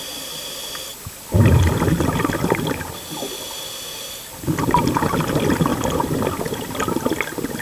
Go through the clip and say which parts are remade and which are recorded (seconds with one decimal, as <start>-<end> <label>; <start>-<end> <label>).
0.0-7.6 recorded